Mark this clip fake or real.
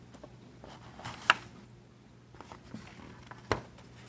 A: real